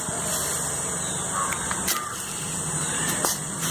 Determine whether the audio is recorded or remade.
recorded